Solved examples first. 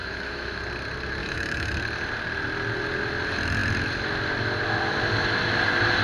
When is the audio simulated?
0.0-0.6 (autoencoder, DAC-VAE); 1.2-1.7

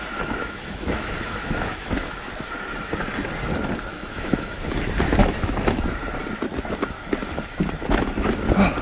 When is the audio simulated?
0.4-2.3 (autoencoder, DAC-VAE); 3.9-4.8; 5.2-6.0

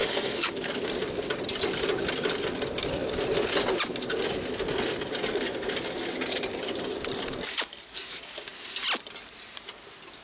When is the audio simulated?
0.0-0.5 (autoencoder, DAC-VAE)

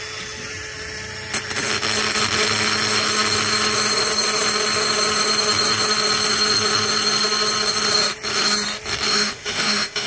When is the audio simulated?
9.1-10.1 (autoencoder, DAC-VAE)

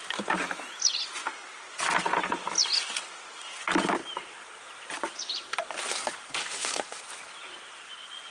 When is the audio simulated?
6.4-7.0 (autoencoder, DAC-VAE)

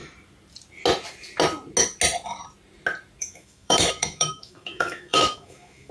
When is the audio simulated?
3.2-5.9 (autoencoder, DAC-VAE)

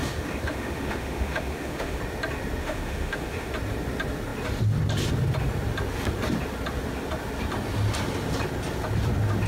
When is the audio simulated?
0.0-2.0 (autoencoder, DAC-VAE); 2.6-3.5

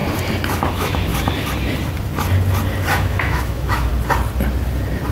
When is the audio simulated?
0.7-1.1 (autoencoder, DAC-VAE); 2.9-3.9